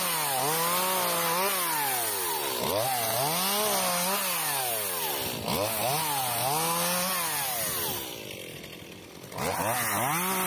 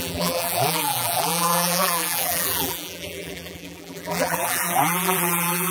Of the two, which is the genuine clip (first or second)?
first